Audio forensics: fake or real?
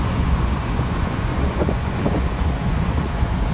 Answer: fake